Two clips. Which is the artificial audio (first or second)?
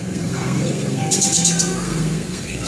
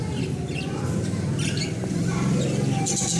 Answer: first